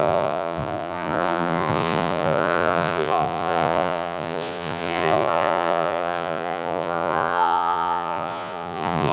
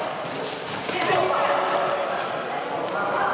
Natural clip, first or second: second